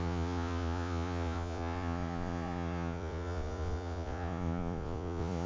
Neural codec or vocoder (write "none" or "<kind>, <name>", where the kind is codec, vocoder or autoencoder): vocoder, Vocos